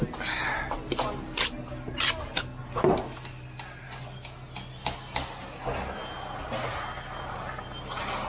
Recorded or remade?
recorded